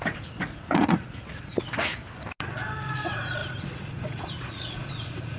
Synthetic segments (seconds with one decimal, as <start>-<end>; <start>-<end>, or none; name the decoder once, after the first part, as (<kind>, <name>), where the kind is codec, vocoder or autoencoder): 0.0-2.0 (vocoder, Vocos); 2.8-5.4